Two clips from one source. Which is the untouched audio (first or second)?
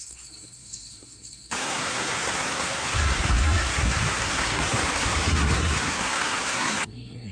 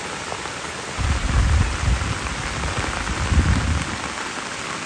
second